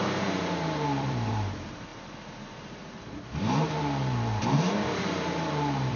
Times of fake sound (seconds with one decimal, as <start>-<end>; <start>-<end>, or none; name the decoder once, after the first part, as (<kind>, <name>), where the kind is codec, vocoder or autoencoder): 0.0-6.0 (vocoder, BigVGAN v2)